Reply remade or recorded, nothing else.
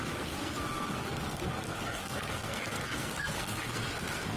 remade